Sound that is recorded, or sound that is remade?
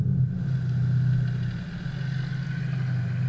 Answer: recorded